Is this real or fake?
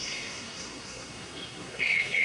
fake